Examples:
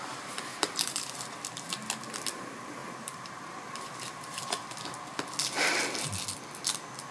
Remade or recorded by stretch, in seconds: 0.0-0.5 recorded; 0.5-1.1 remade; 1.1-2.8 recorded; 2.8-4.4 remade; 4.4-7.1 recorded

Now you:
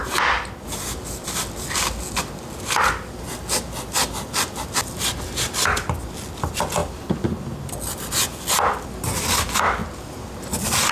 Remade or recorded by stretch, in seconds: 0.0-10.9 recorded

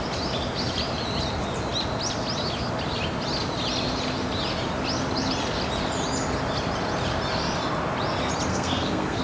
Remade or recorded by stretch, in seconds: 0.0-8.5 recorded; 8.5-9.2 remade

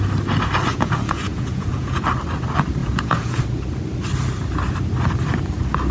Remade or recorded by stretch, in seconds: 0.0-0.7 recorded; 0.7-2.0 remade; 2.0-2.8 recorded; 2.8-3.4 remade; 3.4-5.9 recorded

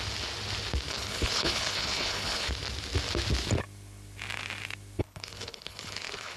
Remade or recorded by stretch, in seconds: 0.0-0.9 recorded; 0.9-2.5 remade; 2.5-5.0 recorded; 5.0-6.4 remade

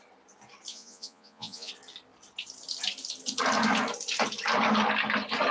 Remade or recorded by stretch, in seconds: 0.0-0.7 recorded; 0.7-1.7 remade; 1.7-5.5 recorded

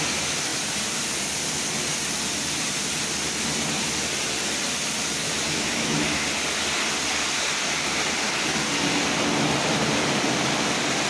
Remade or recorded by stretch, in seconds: 0.0-5.2 recorded; 5.2-6.2 remade; 6.2-11.1 recorded